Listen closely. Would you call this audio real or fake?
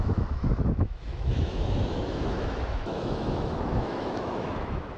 fake